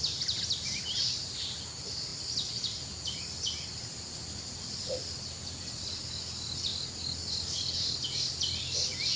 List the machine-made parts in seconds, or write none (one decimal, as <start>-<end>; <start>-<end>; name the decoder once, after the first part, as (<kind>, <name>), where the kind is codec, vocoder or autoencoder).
6.7-8.6 (vocoder, BigVGAN v2)